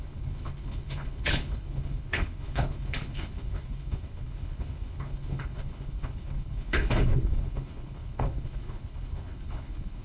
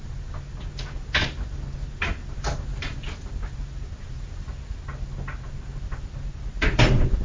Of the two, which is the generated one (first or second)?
first